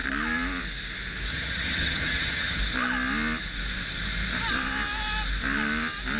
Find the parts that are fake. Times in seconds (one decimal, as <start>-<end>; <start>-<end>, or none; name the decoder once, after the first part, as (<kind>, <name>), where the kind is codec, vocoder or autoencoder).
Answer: 1.3-2.6 (vocoder, HiFi-GAN)